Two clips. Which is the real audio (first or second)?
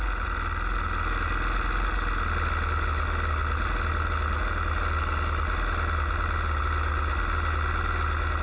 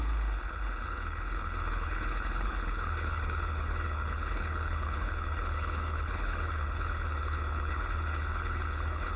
first